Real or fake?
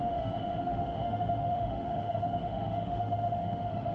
fake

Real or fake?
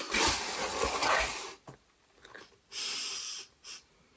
real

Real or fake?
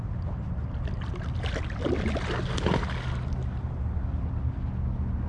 real